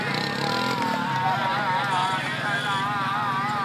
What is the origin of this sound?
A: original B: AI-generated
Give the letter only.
A